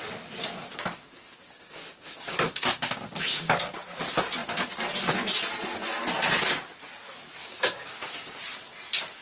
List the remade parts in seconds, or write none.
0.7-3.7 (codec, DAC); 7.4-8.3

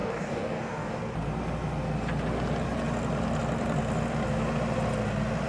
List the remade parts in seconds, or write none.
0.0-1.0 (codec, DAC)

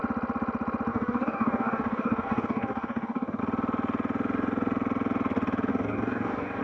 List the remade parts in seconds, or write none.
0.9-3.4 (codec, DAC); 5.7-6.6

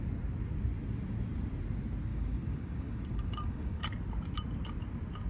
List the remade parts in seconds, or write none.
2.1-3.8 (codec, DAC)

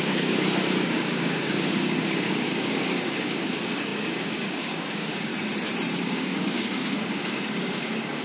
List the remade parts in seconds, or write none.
0.0-5.3 (codec, DAC); 6.0-8.2